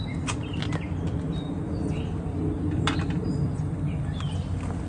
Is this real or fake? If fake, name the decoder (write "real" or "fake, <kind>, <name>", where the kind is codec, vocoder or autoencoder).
real